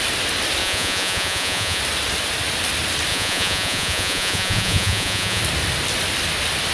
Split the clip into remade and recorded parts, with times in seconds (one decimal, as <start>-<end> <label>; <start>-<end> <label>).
0.0-0.6 recorded; 0.6-1.8 remade; 1.8-3.1 recorded; 3.1-5.4 remade; 5.4-6.7 recorded

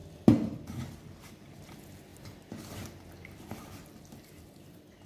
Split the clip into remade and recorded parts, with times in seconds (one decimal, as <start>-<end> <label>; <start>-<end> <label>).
0.0-5.1 recorded

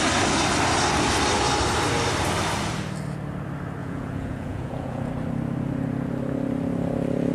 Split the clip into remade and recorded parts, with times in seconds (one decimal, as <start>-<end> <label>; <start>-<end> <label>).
0.0-3.8 recorded; 3.8-5.1 remade; 5.1-7.3 recorded

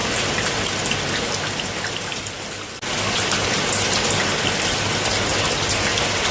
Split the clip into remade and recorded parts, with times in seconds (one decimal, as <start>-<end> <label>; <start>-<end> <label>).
0.0-6.3 recorded

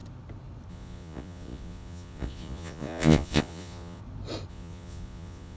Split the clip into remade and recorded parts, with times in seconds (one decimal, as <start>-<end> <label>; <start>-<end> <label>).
0.0-0.7 recorded; 0.7-4.0 remade; 4.0-4.5 recorded; 4.5-5.6 remade

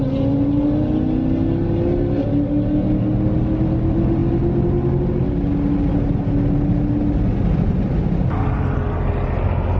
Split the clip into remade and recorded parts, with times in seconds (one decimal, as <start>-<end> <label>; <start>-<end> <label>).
0.0-9.8 recorded

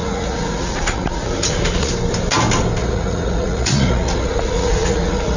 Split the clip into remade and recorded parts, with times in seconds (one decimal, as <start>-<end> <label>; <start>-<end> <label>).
0.0-1.9 remade; 1.9-2.8 recorded; 2.8-5.4 remade

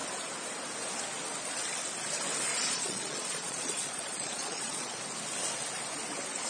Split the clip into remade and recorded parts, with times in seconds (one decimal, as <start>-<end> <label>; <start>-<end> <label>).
0.0-2.5 recorded; 2.5-5.0 remade; 5.0-6.5 recorded